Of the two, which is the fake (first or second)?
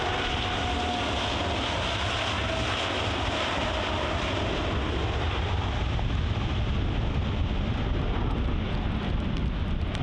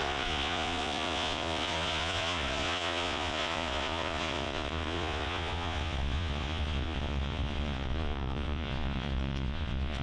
second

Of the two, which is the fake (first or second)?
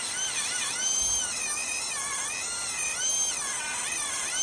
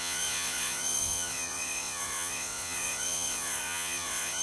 second